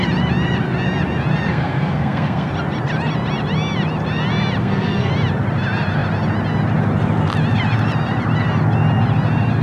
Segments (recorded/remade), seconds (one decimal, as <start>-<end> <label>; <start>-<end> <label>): 0.0-1.5 recorded; 1.5-2.5 remade; 2.5-4.6 recorded; 4.6-5.1 remade; 5.1-9.6 recorded